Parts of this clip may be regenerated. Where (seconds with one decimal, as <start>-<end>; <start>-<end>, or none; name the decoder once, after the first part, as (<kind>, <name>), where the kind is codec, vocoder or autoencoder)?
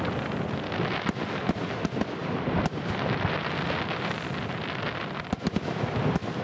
none